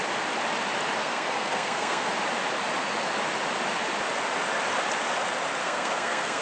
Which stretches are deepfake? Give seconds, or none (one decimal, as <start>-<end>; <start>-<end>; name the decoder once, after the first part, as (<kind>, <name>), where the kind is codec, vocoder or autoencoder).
1.0-2.1 (codec, SNAC); 5.6-6.4